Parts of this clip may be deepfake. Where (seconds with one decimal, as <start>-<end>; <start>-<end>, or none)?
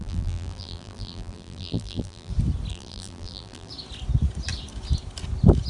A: 0.0-2.3; 2.7-3.7